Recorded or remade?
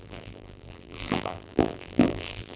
remade